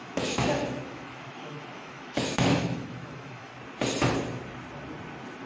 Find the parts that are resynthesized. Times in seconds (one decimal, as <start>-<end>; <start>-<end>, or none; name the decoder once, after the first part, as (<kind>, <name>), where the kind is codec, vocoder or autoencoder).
0.0-3.5 (autoencoder, DAC-VAE)